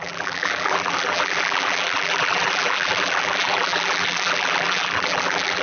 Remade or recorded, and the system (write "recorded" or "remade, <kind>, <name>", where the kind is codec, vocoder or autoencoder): remade, vocoder, BigVGAN v2